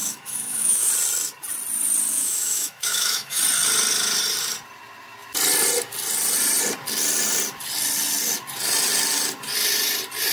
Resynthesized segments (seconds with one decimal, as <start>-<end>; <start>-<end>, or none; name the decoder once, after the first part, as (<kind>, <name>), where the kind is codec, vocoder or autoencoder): 0.0-0.9 (autoencoder, DAC-VAE); 2.1-3.4